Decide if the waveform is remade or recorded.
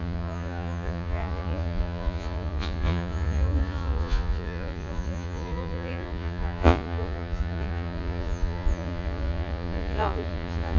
remade